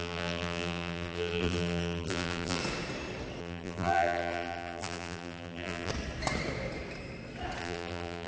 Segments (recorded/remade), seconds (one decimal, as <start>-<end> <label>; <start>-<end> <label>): 0.0-2.6 remade; 2.6-3.4 recorded; 3.4-5.9 remade; 5.9-7.6 recorded; 7.6-8.3 remade